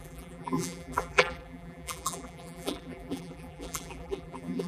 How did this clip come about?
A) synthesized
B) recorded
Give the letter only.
A